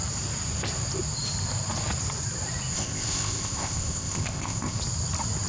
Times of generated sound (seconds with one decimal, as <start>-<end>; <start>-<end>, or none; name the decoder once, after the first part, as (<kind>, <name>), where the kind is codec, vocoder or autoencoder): 2.7-4.8 (codec, ZipCodec)